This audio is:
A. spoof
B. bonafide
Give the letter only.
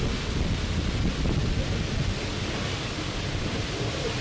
B